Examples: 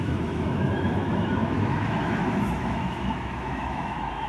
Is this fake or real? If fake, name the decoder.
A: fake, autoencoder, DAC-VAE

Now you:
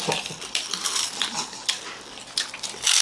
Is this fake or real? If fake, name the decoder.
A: real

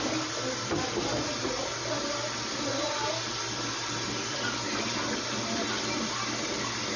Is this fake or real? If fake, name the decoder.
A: real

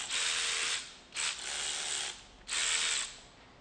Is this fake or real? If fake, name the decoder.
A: real